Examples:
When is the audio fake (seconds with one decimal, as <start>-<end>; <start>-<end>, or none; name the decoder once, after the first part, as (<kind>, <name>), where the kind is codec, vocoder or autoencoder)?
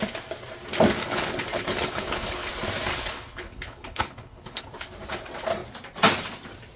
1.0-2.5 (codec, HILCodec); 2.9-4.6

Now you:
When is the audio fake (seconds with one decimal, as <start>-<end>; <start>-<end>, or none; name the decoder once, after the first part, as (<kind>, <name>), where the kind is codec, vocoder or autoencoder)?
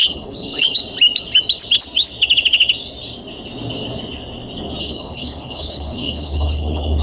0.0-0.8 (codec, HILCodec); 4.8-7.0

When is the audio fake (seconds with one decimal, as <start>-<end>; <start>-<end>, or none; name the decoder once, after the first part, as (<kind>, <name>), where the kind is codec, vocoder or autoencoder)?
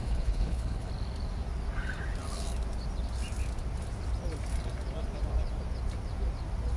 0.0-0.9 (codec, HILCodec)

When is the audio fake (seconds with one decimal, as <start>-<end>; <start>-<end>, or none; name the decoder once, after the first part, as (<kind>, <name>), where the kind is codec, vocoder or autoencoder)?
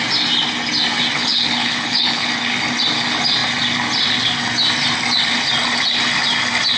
1.2-2.3 (codec, HILCodec)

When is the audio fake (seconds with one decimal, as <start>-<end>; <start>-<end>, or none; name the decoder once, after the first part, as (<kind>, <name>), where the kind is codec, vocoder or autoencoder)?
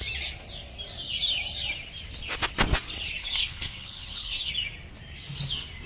3.2-4.5 (codec, HILCodec)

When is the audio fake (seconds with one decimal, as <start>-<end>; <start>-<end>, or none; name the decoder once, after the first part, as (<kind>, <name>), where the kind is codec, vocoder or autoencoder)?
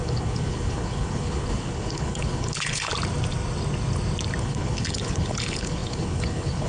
0.0-2.9 (codec, HILCodec); 4.4-6.7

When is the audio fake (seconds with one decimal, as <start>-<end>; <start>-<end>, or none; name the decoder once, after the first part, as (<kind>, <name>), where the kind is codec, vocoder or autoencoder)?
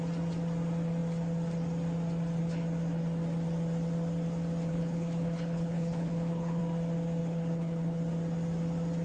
4.7-6.6 (codec, HILCodec); 7.2-8.0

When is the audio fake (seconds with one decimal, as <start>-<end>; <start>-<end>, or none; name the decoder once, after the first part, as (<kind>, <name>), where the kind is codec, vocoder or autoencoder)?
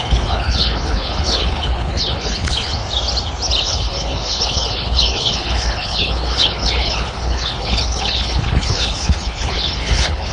0.0-2.8 (codec, HILCodec); 3.6-10.3